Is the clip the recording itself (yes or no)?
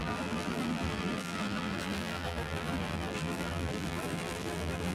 no